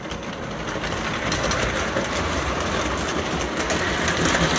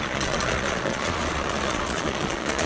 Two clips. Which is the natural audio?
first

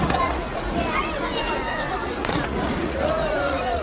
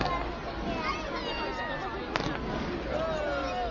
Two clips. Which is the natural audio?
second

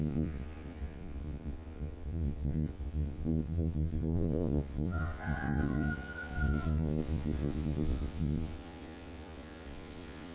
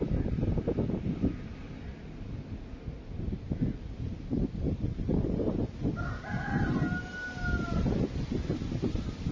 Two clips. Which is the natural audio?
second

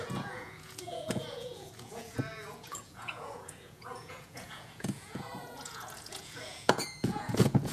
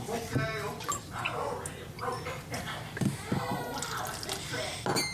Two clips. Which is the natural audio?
second